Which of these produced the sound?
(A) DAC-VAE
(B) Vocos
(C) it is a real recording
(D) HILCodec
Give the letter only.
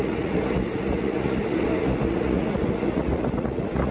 B